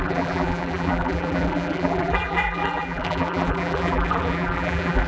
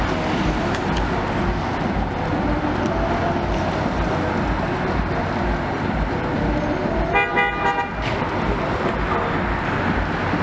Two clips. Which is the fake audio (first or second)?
first